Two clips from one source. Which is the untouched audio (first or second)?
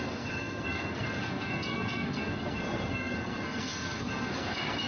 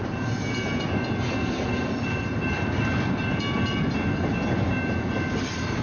second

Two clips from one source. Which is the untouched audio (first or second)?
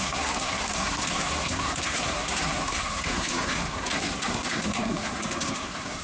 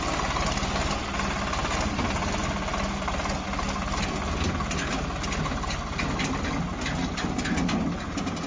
second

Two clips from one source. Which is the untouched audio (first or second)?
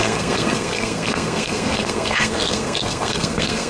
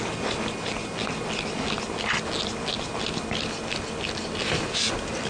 second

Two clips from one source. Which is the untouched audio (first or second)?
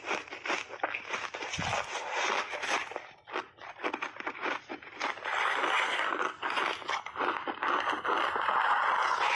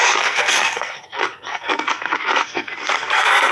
first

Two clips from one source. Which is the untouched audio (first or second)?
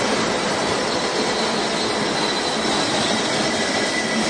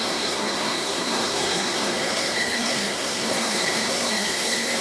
first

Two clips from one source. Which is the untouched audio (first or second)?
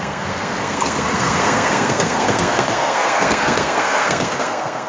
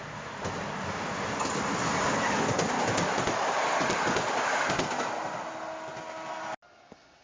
second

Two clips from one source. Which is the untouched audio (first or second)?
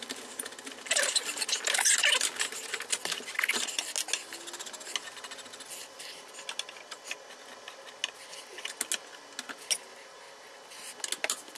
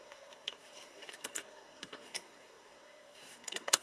first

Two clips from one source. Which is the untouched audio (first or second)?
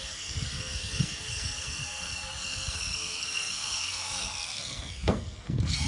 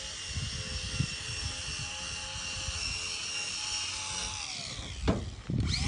second